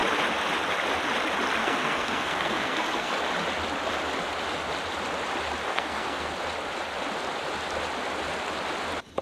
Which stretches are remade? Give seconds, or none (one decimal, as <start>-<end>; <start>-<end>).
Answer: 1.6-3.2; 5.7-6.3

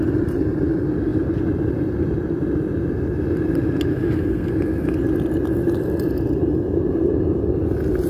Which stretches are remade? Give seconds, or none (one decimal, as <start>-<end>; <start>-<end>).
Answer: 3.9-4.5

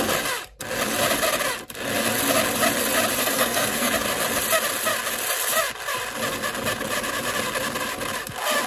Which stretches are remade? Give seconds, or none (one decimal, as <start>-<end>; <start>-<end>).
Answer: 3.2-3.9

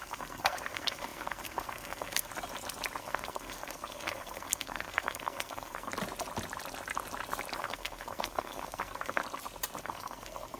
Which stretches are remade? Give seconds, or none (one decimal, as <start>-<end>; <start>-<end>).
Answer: 0.0-2.3; 3.0-5.9; 7.6-9.2; 9.8-10.6

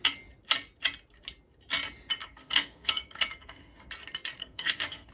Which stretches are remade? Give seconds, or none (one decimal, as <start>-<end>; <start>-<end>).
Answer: 2.2-3.9; 4.4-5.1

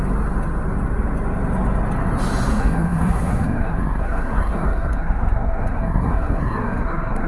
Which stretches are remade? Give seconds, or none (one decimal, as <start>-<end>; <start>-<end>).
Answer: 2.5-7.3

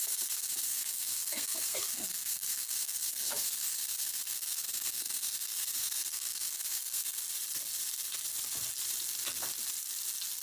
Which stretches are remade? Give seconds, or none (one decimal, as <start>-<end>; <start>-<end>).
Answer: 0.0-7.2

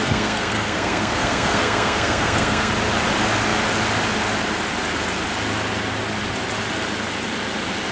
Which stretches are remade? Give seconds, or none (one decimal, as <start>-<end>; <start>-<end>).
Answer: 0.0-2.7